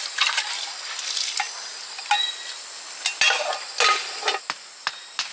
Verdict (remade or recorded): recorded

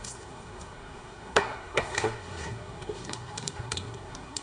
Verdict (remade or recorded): remade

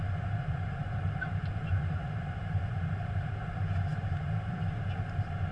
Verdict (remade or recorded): remade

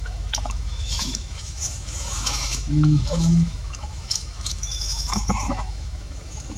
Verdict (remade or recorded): remade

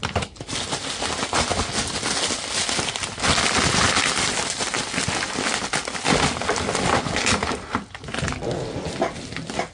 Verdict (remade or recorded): recorded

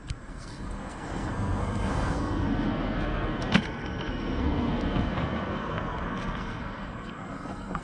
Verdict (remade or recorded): remade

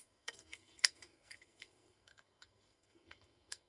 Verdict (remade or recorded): remade